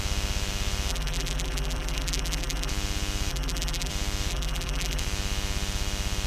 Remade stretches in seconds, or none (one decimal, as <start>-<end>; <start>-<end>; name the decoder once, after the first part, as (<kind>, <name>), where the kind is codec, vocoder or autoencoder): 0.9-2.7 (vocoder, BigVGAN v2); 3.3-3.9; 4.3-5.0

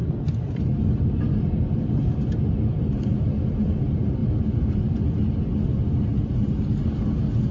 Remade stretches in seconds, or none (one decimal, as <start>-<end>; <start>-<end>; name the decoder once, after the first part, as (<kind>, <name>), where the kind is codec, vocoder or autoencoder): none

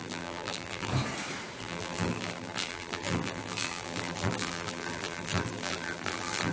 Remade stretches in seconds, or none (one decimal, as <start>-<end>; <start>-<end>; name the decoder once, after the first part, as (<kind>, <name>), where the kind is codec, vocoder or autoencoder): 0.0-0.9 (vocoder, BigVGAN v2); 1.6-6.5